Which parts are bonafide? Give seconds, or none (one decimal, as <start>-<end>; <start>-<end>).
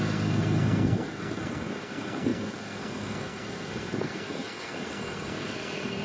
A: none